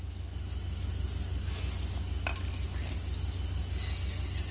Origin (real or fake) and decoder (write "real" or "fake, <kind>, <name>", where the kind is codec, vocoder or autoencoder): real